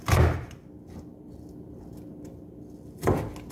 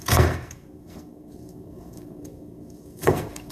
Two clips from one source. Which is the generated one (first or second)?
second